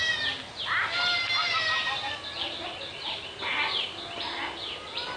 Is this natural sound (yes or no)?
yes